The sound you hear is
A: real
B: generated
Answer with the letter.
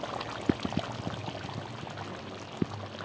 A